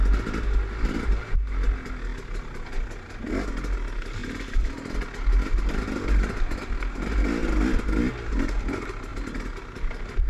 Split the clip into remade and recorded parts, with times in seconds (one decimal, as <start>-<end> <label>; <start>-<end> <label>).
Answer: 0.0-10.3 recorded